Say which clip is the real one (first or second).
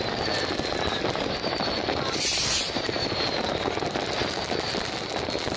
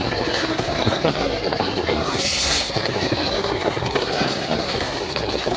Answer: first